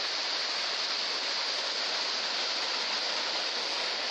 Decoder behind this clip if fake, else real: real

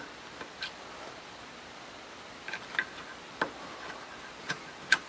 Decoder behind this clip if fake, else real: real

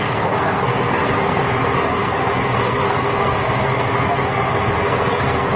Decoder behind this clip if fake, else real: fake, codec, SNAC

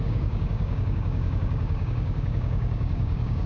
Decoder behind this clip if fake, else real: fake, codec, DAC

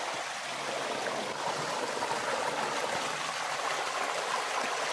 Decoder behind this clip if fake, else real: real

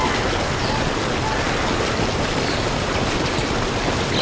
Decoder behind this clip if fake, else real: real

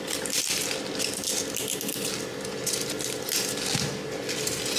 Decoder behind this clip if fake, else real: real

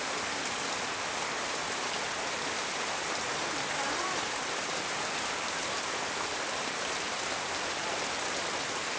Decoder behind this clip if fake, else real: real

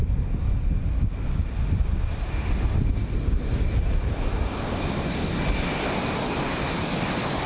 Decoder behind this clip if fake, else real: real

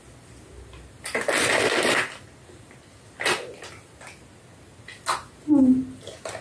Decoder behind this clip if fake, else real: real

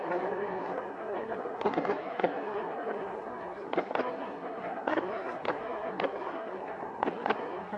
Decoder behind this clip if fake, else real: fake, codec, SNAC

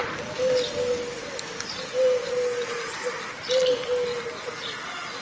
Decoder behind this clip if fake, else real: real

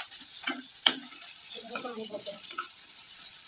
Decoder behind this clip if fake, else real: fake, vocoder, Vocos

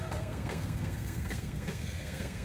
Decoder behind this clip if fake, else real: fake, codec, SNAC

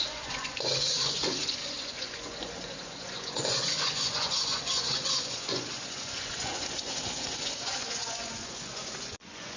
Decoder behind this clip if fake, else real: fake, vocoder, Vocos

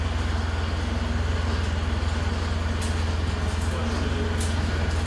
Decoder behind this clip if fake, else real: real